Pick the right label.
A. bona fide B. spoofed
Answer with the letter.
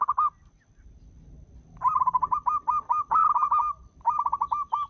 A